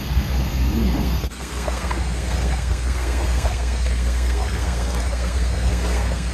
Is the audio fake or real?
fake